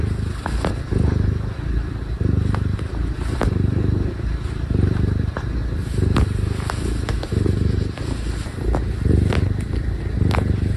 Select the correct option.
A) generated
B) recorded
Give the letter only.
B